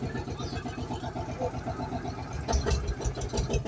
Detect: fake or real real